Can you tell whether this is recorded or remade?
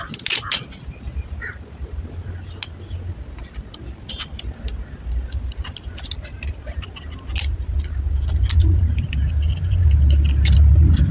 recorded